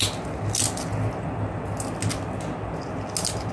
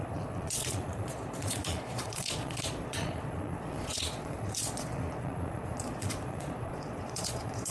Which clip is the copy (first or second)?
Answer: second